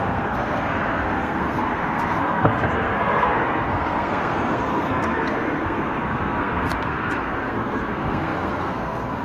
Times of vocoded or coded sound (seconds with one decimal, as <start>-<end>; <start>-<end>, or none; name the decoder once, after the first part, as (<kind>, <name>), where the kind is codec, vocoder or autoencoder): 0.0-9.2 (codec, SNAC)